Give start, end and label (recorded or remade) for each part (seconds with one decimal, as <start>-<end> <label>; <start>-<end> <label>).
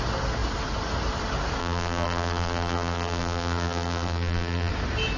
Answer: 0.0-1.6 recorded; 1.6-4.7 remade; 4.7-5.2 recorded